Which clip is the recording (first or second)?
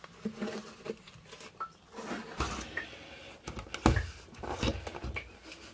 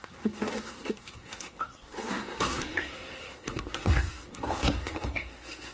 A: first